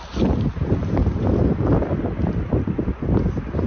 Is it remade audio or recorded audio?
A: recorded